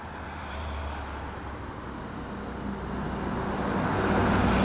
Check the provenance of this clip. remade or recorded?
recorded